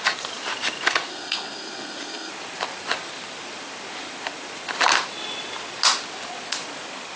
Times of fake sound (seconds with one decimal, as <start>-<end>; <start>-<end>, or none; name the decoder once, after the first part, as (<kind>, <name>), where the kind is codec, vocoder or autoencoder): 1.1-2.3 (codec, SNAC)